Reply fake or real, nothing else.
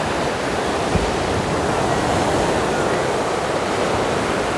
real